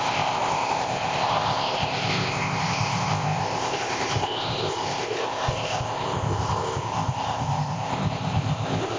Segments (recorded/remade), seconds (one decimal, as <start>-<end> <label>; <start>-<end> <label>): 0.0-9.0 remade